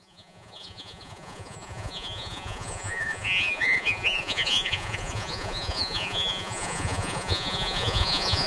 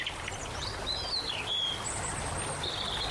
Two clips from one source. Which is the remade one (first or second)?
first